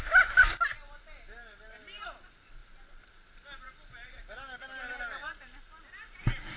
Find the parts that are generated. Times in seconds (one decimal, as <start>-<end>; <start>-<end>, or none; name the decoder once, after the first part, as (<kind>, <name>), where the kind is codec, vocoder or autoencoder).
none